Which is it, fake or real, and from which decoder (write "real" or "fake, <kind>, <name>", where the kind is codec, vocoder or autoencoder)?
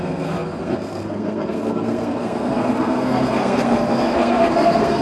fake, codec, SNAC